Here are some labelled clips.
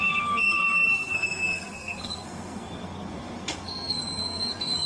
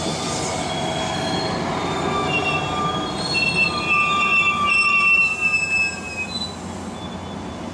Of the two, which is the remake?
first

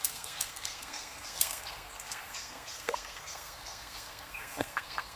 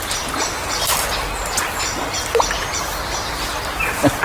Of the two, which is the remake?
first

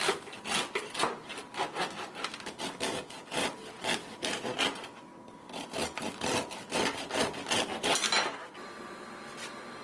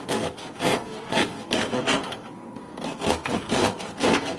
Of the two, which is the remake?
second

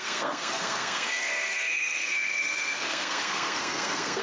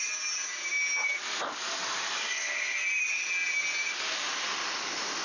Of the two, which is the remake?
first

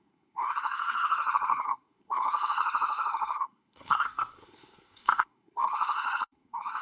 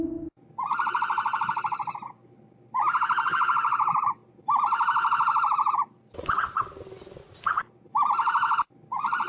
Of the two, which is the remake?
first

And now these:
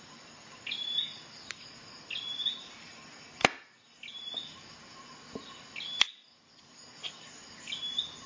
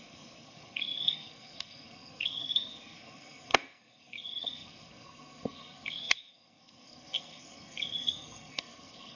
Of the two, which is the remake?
second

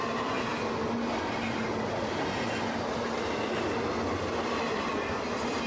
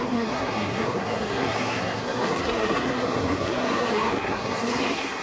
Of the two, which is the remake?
second